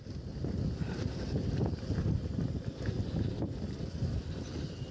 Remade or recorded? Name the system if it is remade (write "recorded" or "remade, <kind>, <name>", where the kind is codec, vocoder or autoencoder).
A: recorded